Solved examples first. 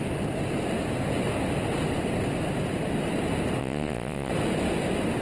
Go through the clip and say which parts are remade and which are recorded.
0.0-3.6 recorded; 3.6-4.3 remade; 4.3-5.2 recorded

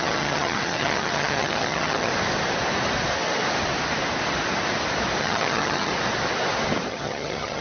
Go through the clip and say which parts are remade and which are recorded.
0.0-2.1 remade; 2.1-5.2 recorded; 5.2-5.9 remade; 5.9-6.9 recorded; 6.9-7.6 remade

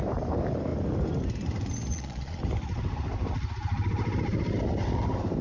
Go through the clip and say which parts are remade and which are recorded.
0.0-1.9 recorded; 1.9-2.4 remade; 2.4-5.4 recorded